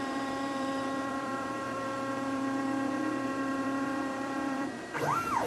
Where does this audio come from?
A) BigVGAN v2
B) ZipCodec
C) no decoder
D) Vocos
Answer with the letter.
A